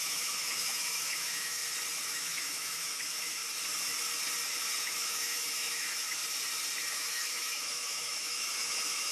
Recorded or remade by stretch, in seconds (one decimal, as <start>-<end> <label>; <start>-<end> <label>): 0.0-1.6 remade; 1.6-2.1 recorded; 2.1-3.4 remade; 3.4-4.8 recorded; 4.8-6.2 remade; 6.2-6.9 recorded; 6.9-9.1 remade